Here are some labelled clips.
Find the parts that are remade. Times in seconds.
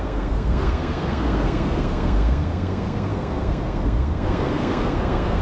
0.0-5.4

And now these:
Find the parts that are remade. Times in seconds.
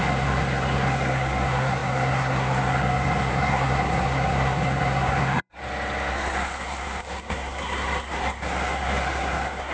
0.0-5.6; 6.1-9.7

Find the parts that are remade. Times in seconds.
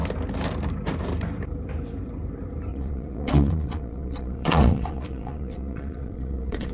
2.7-6.7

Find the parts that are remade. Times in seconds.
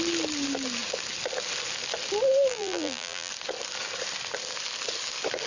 2.5-3.3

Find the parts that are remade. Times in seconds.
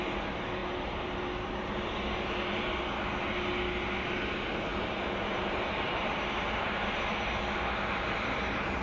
0.6-1.2; 4.7-6.7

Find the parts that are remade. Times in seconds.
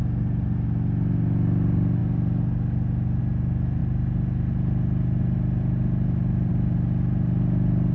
none